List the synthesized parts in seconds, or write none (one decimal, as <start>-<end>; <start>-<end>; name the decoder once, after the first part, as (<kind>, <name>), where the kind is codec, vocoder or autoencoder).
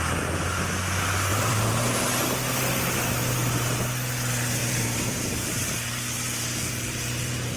1.3-2.0 (vocoder, BigVGAN v2); 4.6-6.0